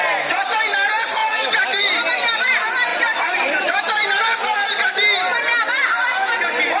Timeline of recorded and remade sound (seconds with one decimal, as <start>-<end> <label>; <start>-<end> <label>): 0.0-1.2 recorded; 1.2-1.8 remade; 1.8-2.9 recorded; 2.9-4.2 remade; 4.2-6.8 recorded